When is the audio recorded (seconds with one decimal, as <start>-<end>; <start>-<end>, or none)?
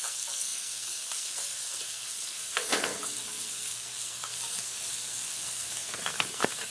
none